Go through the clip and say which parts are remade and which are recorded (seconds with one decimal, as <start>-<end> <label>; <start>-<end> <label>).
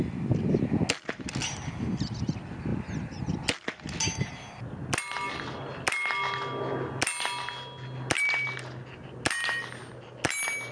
0.0-10.7 recorded